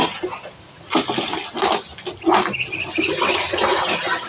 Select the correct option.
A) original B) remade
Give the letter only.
A